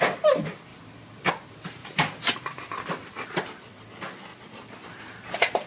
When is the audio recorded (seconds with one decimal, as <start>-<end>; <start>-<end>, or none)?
0.0-5.7